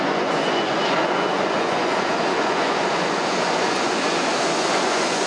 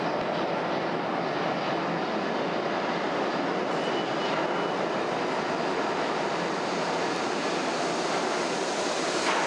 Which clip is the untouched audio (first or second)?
second